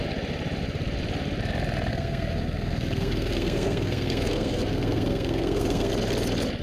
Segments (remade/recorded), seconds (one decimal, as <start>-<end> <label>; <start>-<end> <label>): 0.0-1.9 recorded; 1.9-5.9 remade; 5.9-6.6 recorded